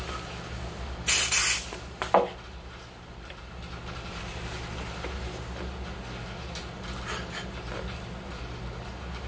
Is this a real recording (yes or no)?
yes